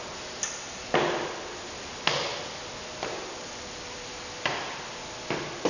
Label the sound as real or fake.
real